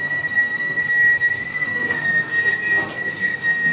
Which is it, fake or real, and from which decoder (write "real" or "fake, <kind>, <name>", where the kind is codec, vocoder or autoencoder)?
fake, codec, SNAC